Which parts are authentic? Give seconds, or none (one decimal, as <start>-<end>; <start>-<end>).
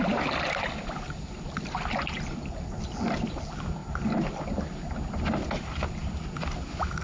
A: 0.0-7.0